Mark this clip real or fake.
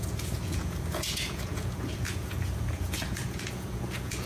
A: fake